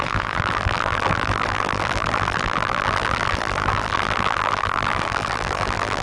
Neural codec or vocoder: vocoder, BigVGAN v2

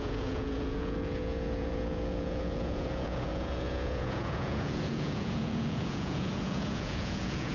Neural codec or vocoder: vocoder, Vocos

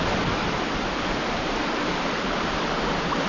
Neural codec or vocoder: none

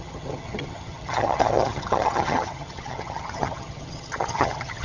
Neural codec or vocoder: vocoder, HiFi-GAN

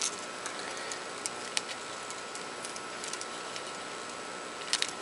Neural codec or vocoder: none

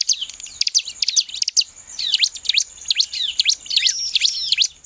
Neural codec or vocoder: none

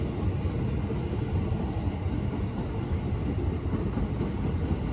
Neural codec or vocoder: none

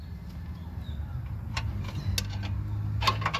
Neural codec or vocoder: none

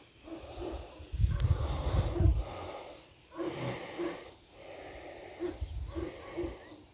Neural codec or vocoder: none